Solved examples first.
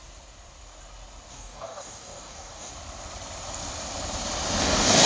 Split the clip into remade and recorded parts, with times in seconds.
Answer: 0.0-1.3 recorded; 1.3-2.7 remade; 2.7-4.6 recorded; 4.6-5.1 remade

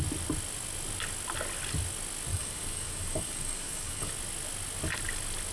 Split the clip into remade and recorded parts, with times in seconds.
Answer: 0.0-2.3 recorded; 2.3-4.1 remade; 4.1-5.5 recorded

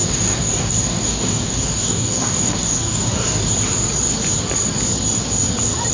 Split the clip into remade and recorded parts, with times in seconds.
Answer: 0.0-3.5 remade; 3.5-5.9 recorded

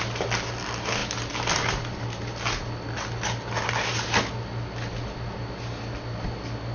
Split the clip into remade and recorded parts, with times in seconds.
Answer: 0.0-6.7 recorded